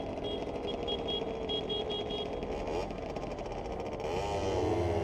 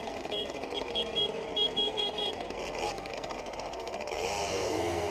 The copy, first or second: second